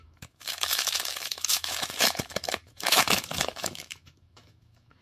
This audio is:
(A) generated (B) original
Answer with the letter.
A